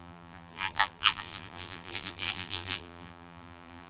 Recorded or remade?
remade